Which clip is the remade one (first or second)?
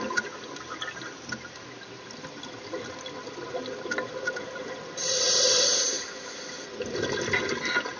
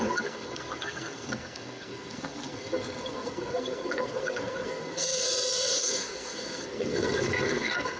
second